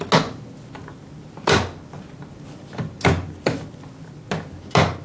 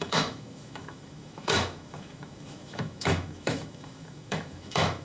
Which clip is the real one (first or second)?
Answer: first